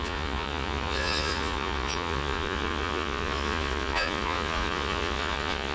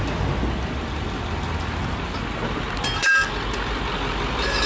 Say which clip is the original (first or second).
second